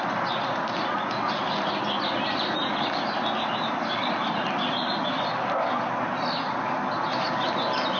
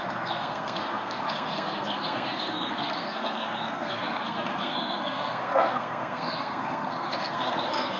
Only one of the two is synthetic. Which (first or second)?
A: second